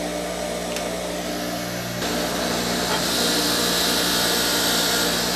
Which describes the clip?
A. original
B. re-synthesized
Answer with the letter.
A